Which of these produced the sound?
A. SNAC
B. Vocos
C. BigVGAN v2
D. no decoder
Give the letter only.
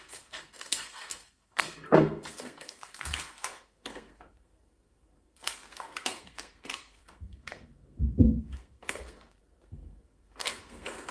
A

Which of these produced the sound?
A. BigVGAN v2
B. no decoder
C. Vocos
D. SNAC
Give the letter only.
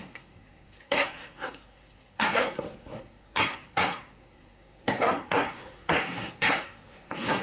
D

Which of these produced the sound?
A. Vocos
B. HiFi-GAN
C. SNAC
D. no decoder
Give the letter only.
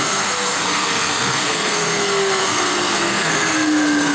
C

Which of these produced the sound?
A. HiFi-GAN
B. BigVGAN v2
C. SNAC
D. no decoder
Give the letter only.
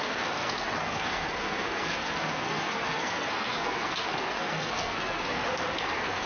C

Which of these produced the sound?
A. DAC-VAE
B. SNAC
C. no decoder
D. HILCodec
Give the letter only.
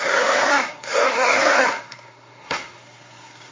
B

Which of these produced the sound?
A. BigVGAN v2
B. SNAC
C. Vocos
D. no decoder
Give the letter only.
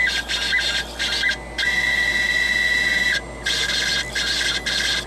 D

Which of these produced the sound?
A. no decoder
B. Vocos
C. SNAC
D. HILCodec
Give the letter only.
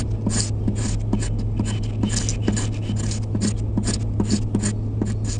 A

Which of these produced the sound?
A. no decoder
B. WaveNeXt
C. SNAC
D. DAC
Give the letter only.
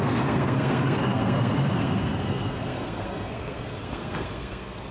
C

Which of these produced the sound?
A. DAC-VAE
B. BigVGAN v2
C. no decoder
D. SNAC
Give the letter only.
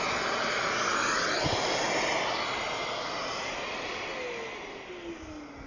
C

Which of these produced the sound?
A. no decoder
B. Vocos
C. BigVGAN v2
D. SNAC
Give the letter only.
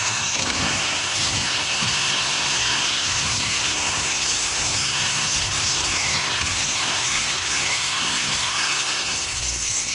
D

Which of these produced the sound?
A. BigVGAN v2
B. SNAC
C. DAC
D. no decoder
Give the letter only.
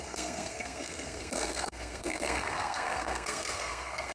B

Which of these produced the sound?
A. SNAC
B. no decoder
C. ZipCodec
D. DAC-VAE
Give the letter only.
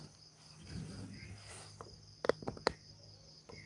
B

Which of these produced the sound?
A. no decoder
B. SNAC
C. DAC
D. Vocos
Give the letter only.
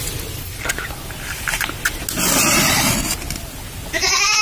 A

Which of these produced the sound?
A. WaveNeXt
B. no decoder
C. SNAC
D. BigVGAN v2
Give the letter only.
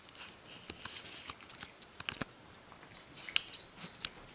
B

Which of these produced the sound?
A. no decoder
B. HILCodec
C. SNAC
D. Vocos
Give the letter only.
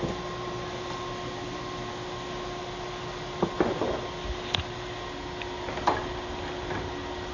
A